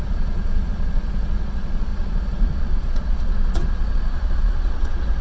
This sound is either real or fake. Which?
fake